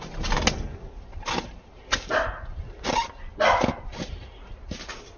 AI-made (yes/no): no